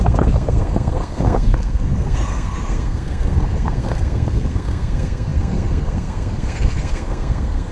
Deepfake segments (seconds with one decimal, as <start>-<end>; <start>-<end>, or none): 0.0-7.7